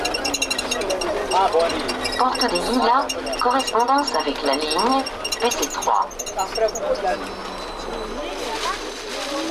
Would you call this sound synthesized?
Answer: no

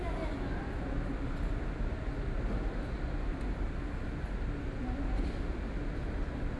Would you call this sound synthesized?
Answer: no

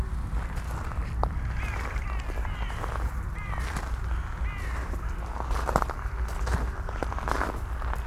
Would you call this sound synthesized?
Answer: no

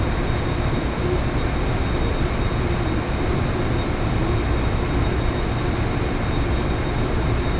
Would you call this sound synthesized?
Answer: no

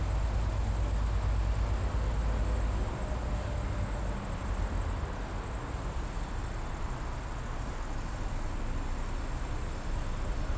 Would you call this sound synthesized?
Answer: no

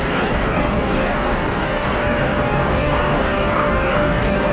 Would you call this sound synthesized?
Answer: yes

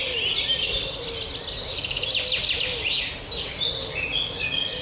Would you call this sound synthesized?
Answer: no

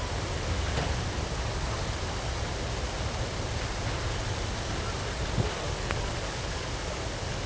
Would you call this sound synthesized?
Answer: no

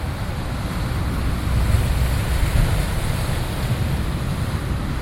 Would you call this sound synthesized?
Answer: no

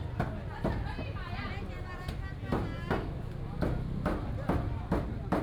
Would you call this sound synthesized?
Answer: no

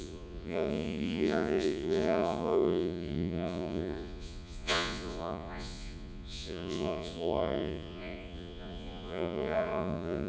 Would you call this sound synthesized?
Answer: yes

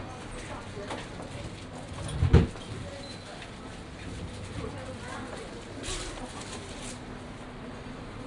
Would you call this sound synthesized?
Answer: no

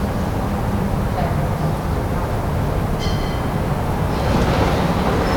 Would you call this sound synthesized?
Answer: no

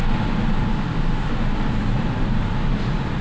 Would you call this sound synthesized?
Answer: no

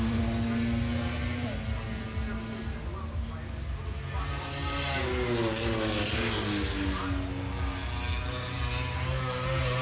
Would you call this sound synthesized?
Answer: no